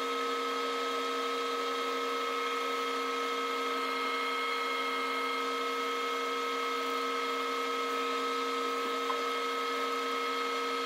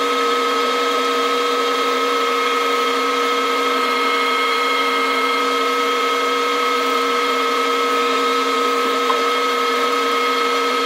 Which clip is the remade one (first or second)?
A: second